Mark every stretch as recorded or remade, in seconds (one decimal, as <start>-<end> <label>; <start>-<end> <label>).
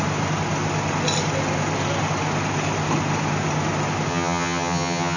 0.0-4.1 recorded; 4.1-5.2 remade